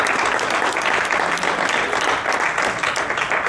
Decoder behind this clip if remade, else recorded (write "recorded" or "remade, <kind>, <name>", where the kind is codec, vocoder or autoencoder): recorded